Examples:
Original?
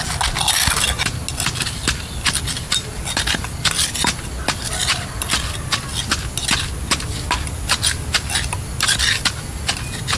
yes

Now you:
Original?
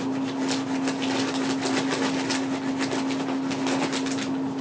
yes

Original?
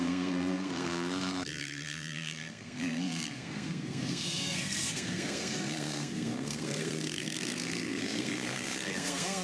no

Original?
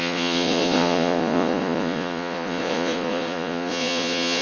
no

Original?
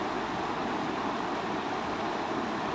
yes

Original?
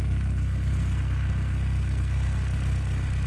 no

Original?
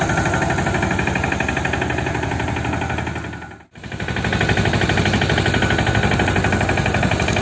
yes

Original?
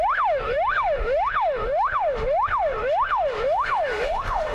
no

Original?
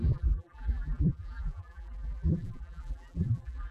no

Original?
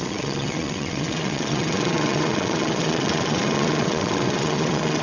no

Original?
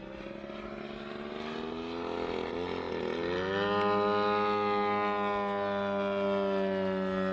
yes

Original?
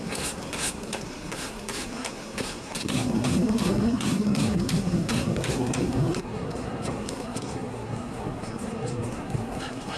no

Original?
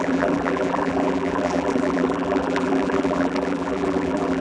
no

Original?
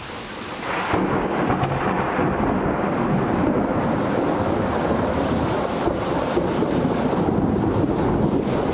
yes